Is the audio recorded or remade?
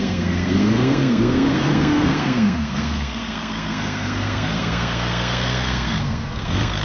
remade